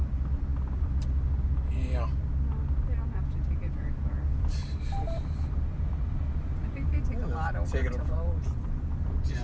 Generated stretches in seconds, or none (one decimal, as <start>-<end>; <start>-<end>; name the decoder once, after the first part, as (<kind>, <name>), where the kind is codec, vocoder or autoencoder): none